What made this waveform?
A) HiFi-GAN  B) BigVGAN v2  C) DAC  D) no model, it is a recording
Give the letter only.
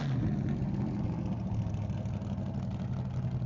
D